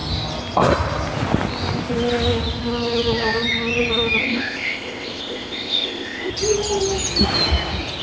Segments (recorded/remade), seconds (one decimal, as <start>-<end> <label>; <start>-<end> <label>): 0.0-4.2 recorded; 4.2-6.3 remade; 6.3-8.0 recorded